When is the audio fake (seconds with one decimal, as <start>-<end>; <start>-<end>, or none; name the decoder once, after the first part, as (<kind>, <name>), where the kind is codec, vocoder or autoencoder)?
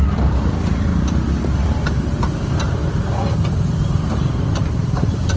0.0-0.9 (vocoder, BigVGAN v2); 4.1-5.4